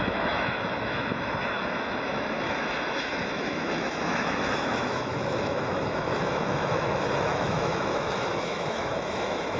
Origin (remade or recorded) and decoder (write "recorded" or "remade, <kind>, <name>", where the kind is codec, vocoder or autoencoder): remade, autoencoder, DAC-VAE